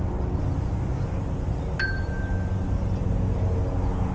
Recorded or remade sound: recorded